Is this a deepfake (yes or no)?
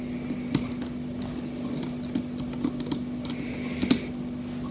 no